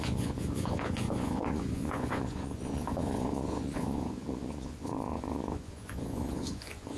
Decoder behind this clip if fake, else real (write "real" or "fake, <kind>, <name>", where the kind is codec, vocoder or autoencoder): fake, vocoder, Vocos